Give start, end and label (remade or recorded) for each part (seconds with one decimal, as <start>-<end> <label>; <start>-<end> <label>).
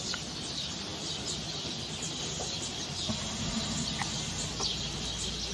0.0-5.5 recorded